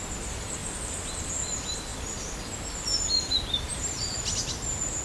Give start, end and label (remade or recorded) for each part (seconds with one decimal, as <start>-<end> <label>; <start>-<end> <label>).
0.0-0.6 recorded; 0.6-1.3 remade; 1.3-1.9 recorded; 1.9-2.5 remade; 2.5-3.7 recorded; 3.7-5.0 remade